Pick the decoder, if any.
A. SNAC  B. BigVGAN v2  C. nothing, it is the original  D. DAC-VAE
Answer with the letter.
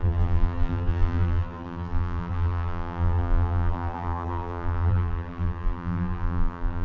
B